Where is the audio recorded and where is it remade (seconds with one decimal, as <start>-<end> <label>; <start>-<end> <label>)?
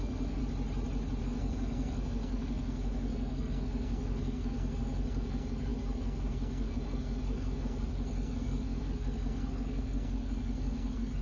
0.0-0.4 remade; 0.4-1.2 recorded; 1.2-11.2 remade